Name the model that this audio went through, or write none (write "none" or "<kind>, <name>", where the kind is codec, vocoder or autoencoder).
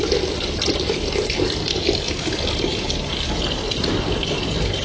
none